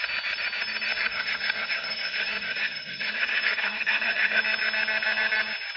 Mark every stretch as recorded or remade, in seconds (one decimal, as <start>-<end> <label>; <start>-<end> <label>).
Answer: 0.0-0.9 recorded; 0.9-4.4 remade; 4.4-5.8 recorded